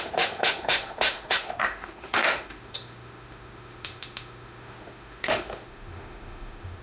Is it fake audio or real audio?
fake